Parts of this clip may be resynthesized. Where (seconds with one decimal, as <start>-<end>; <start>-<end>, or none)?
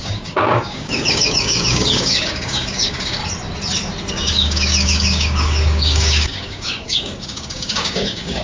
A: 0.0-3.2; 4.1-8.4